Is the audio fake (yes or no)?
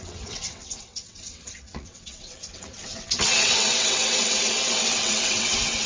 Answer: yes